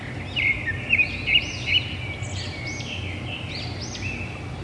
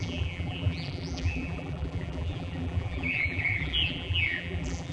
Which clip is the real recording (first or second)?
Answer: first